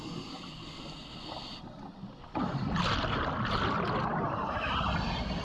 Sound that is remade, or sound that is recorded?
recorded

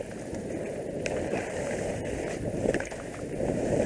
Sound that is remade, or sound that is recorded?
remade